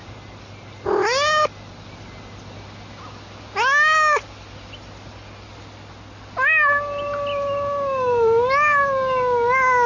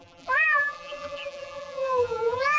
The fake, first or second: second